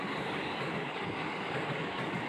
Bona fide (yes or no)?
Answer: no